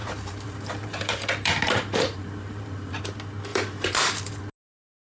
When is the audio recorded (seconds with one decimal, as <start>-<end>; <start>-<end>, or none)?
3.0-3.5; 4.4-5.1